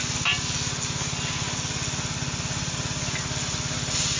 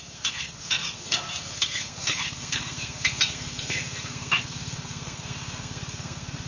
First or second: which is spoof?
second